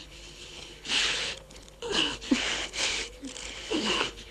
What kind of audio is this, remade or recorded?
remade